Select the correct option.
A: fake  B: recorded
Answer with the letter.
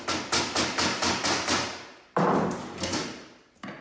B